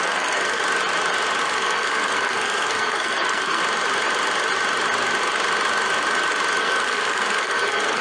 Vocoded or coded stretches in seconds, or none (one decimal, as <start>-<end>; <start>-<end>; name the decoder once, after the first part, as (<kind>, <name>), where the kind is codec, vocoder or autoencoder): 0.0-0.6 (codec, SNAC); 1.4-3.6; 6.6-8.0

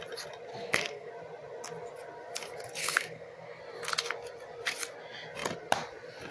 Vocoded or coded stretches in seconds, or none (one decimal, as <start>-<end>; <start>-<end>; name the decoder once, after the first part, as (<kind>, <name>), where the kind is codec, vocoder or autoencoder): 0.5-1.1 (codec, SNAC); 2.8-3.6

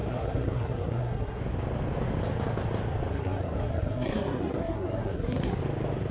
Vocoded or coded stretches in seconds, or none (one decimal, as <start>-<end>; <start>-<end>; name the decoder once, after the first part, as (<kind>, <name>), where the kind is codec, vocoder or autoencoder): 0.0-1.4 (codec, SNAC); 3.1-5.6